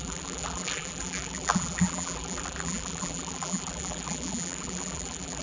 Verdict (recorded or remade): remade